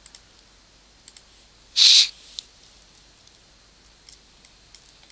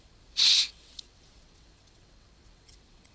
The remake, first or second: second